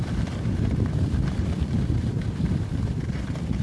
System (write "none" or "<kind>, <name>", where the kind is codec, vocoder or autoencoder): none